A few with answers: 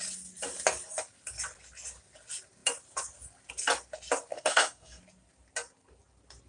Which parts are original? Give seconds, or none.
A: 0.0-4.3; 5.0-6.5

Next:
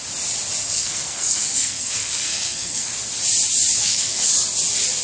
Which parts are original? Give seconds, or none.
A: 0.0-0.6; 2.9-3.8; 4.3-5.0

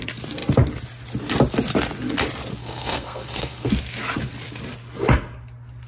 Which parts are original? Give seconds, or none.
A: 0.0-2.6; 3.7-5.9

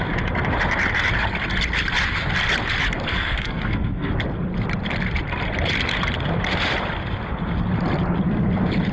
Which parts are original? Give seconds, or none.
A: 0.0-3.1; 4.1-8.9

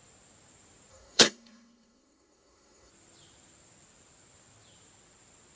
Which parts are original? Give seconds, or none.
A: 0.0-0.9; 2.9-5.6

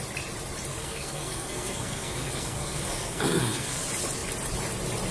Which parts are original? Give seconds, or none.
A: 0.0-0.7; 3.8-5.1

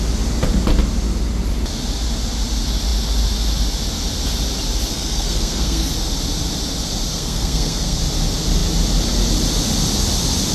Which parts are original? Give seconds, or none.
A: 0.0-4.9; 5.9-7.1; 8.0-10.5

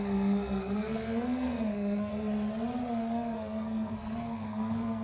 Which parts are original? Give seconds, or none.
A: 2.1-2.9